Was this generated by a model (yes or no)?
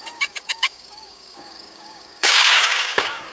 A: yes